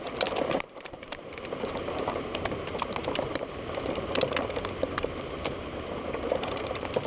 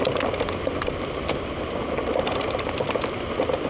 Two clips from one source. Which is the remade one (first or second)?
first